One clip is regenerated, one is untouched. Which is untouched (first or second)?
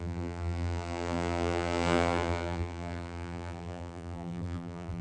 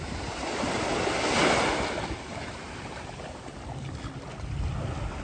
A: second